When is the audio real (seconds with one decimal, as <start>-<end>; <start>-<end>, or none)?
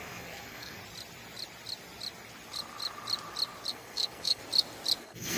0.8-3.7; 4.4-5.0